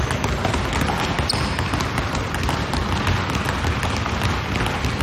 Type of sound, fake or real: real